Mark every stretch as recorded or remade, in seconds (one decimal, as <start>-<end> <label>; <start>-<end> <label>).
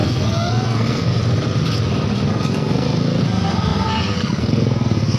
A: 0.0-1.2 remade; 1.2-2.3 recorded; 2.3-5.2 remade